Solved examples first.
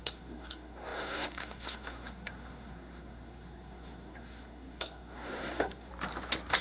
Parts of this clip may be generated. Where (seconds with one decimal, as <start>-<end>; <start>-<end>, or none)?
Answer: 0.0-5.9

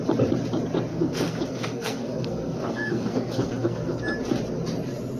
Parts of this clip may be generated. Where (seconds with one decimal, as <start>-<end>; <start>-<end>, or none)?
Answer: 0.9-4.0

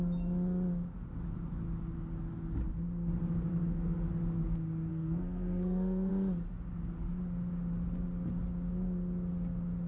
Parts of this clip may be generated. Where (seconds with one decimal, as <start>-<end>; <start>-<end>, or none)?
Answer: 3.5-4.1; 4.9-6.1

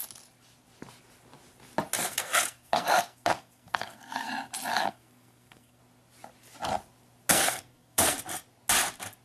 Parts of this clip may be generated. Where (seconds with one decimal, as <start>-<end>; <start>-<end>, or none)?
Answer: 2.0-4.3; 4.7-5.8; 7.3-8.2

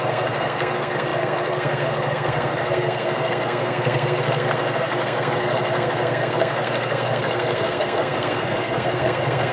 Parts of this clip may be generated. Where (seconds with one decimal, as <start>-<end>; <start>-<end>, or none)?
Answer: 0.0-9.5